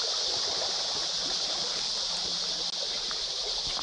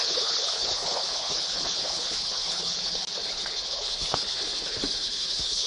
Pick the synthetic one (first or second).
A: second